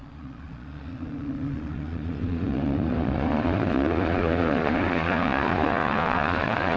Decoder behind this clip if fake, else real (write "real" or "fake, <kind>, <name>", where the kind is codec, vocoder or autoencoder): fake, vocoder, Vocos